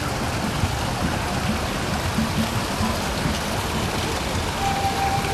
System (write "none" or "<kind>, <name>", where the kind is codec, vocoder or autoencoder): none